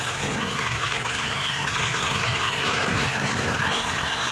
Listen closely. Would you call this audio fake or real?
fake